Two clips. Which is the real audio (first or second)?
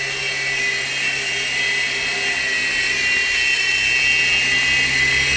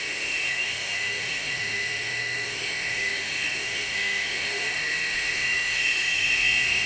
first